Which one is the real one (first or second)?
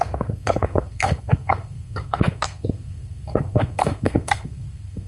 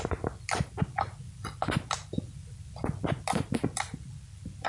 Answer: second